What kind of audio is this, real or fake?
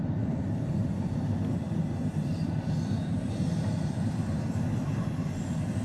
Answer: real